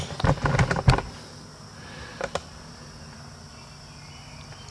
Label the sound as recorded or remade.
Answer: recorded